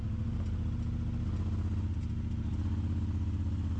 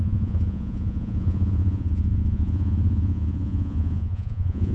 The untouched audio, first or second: first